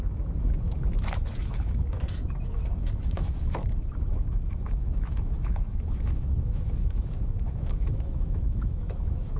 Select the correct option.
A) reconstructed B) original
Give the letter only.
A